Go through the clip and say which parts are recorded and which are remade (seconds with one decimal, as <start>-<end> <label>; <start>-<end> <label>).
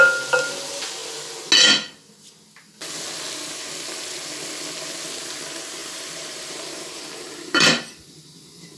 0.0-5.8 recorded; 5.8-7.8 remade; 7.8-8.8 recorded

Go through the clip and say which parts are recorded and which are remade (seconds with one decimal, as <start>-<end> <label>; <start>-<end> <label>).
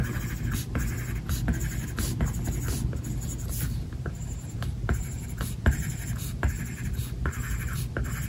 0.0-3.8 recorded; 3.8-7.8 remade; 7.8-8.3 recorded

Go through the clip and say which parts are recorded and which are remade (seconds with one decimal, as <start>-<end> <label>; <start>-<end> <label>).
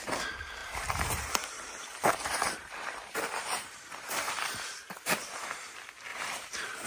0.0-0.6 recorded; 0.6-1.5 remade; 1.5-1.9 recorded; 1.9-5.6 remade; 5.6-6.1 recorded; 6.1-6.9 remade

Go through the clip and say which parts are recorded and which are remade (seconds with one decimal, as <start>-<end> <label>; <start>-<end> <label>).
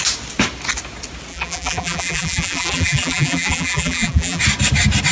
0.0-1.3 recorded; 1.3-4.4 remade; 4.4-5.1 recorded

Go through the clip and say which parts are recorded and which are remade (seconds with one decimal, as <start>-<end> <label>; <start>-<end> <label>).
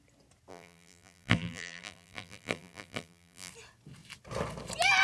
0.0-0.5 recorded; 0.5-3.5 remade; 3.5-5.0 recorded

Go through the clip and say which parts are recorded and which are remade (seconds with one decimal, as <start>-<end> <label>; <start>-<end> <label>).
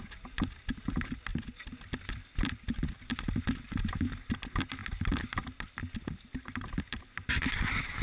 0.0-1.3 recorded; 1.3-3.4 remade; 3.4-8.0 recorded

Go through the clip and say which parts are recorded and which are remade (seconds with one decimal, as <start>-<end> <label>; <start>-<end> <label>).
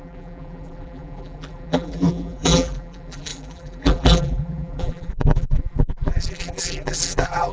0.0-7.5 remade